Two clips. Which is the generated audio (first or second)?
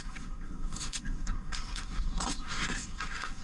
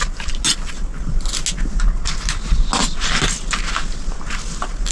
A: first